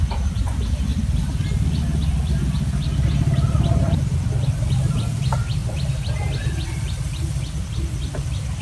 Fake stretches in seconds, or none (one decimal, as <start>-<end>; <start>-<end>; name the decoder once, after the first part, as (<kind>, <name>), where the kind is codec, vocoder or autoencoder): none